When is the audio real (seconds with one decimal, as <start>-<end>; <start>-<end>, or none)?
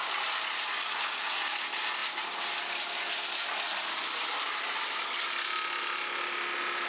0.0-6.9